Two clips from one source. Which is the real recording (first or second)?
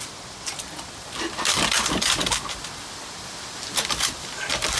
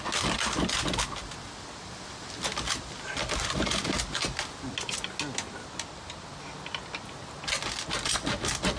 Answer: second